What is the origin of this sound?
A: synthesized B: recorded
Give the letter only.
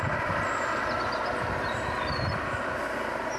B